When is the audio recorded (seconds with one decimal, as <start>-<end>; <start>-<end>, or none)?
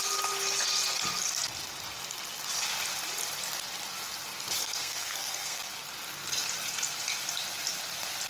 0.0-4.6; 5.6-8.3